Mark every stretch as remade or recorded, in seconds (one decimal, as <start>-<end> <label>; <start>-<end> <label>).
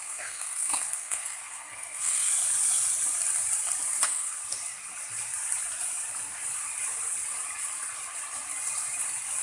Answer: 0.0-2.3 remade; 2.3-4.0 recorded; 4.0-4.4 remade; 4.4-9.4 recorded